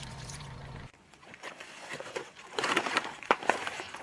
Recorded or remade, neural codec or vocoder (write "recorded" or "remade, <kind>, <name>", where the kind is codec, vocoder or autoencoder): remade, vocoder, Vocos